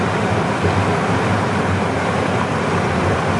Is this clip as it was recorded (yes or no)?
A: yes